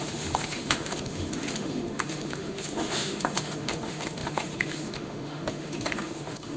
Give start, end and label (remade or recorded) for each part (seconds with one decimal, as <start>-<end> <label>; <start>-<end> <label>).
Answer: 0.0-6.6 remade